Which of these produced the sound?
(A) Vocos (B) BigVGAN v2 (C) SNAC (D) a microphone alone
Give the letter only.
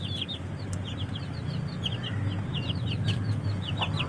D